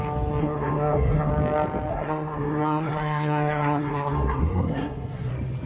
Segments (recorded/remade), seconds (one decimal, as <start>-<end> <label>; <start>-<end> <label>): 0.0-0.4 recorded; 0.4-1.3 remade; 1.3-1.9 recorded; 1.9-5.3 remade; 5.3-5.7 recorded